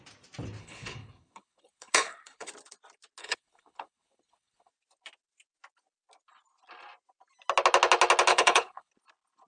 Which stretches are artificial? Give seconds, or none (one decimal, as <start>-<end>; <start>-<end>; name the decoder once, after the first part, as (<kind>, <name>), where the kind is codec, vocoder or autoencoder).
0.6-2.5 (codec, HILCodec); 3.2-4.7; 8.3-8.9